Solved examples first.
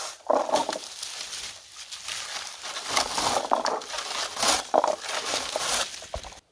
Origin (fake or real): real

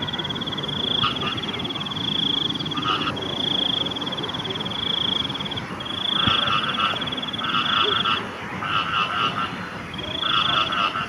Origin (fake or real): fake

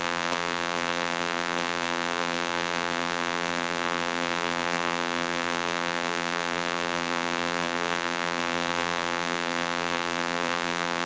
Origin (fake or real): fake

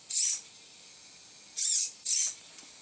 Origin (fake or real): real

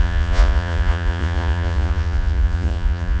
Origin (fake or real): fake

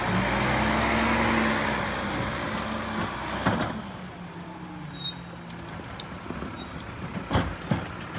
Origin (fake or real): real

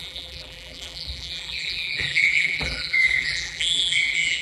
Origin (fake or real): fake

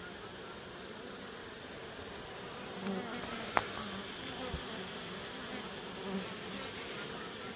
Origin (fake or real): real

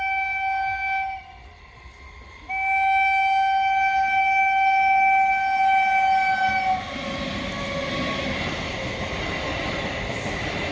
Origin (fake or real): real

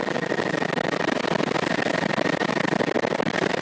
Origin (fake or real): real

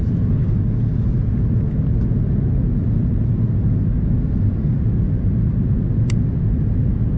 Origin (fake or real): real